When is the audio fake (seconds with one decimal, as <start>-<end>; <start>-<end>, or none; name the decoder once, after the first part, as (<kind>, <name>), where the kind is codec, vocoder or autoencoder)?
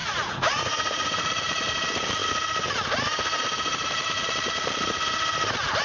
0.0-1.3 (vocoder, Vocos)